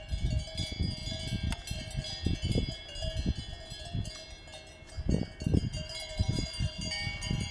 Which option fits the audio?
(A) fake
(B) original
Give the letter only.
B